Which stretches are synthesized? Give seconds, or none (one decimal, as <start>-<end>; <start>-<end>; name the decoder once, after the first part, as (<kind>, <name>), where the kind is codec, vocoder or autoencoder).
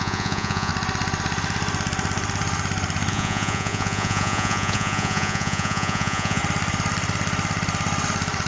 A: 0.0-0.7 (vocoder, Vocos); 3.1-6.4